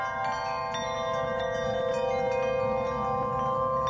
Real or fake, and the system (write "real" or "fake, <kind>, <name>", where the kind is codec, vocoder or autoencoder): real